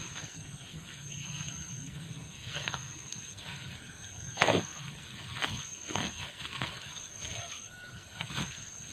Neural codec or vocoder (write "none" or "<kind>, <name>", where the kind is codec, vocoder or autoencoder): codec, SNAC